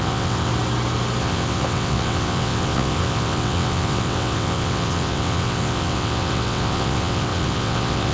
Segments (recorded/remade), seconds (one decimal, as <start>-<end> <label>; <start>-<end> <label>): 0.0-0.5 remade; 0.5-1.2 recorded; 1.2-8.1 remade